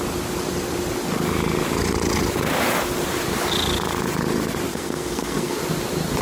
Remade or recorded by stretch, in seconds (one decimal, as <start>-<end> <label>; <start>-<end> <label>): 0.0-4.7 recorded; 4.7-5.6 remade; 5.6-6.2 recorded